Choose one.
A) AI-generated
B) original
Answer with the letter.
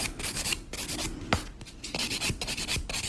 B